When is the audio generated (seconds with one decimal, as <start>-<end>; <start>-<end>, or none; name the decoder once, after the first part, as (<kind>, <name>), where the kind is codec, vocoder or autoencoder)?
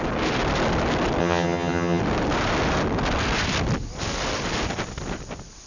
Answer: 1.2-2.0 (vocoder, HiFi-GAN)